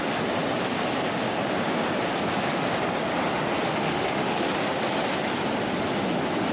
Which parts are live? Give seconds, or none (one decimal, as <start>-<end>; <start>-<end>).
0.0-3.7; 4.5-6.5